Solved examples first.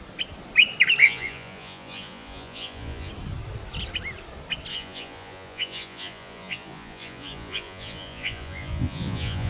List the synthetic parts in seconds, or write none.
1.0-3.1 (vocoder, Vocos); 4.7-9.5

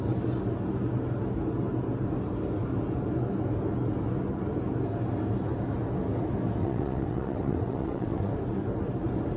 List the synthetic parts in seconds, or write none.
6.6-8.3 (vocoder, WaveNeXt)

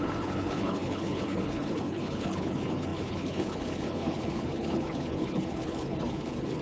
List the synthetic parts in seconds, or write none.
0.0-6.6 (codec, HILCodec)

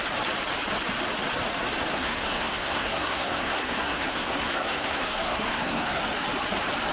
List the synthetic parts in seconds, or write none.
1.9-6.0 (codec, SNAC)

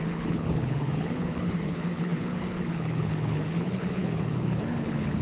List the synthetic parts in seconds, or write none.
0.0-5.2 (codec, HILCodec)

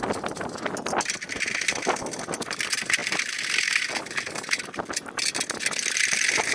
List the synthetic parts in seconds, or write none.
none

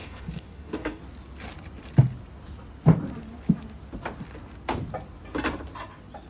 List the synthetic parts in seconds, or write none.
0.0-1.0 (codec, DAC)

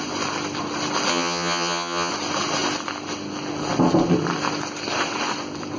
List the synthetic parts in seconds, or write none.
1.1-2.1 (vocoder, HiFi-GAN)